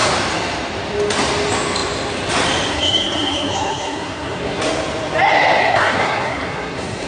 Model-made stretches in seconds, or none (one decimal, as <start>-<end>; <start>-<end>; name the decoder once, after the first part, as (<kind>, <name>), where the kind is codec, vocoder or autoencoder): 2.7-4.6 (codec, SNAC); 5.6-7.1

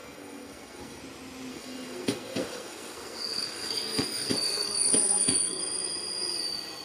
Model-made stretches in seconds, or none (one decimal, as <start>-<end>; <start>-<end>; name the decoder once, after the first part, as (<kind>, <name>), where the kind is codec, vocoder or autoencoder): 0.0-1.0 (codec, SNAC); 1.5-5.6

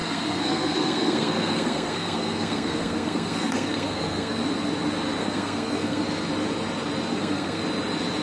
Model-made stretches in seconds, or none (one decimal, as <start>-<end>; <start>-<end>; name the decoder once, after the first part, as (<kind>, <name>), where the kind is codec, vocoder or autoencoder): 0.0-4.4 (codec, SNAC); 5.2-6.0; 7.1-7.6

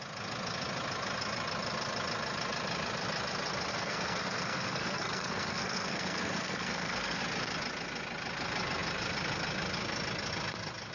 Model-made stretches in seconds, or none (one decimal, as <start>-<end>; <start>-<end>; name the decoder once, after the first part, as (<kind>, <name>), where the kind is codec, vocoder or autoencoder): 3.7-7.2 (codec, SNAC)

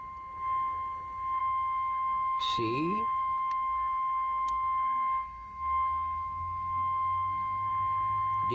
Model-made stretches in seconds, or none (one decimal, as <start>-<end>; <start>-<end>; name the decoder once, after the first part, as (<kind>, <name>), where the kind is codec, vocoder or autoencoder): 1.4-2.4 (codec, SNAC); 3.2-7.7